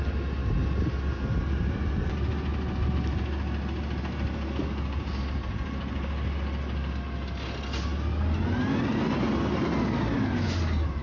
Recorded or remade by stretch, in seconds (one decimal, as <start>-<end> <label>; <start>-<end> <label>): 0.0-11.0 recorded